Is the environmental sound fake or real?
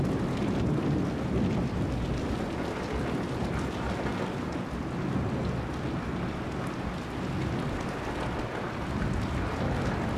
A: real